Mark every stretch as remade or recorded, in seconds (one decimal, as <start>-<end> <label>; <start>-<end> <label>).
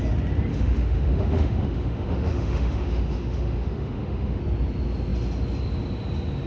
0.0-0.5 recorded; 0.5-4.4 remade; 4.4-6.5 recorded